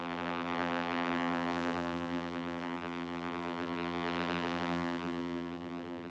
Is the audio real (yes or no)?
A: no